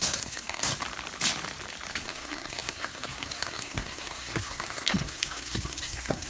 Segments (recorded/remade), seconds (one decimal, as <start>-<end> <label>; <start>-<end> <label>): 0.0-0.7 remade; 0.7-1.9 recorded; 1.9-6.3 remade